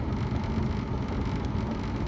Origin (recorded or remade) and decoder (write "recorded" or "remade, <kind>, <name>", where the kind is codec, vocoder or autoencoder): recorded